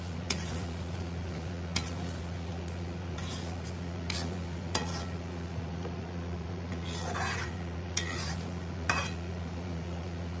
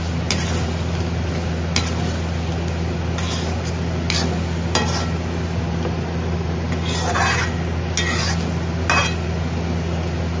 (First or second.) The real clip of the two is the second